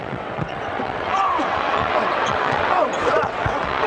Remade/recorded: remade